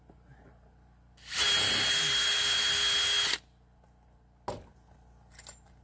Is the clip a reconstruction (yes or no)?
no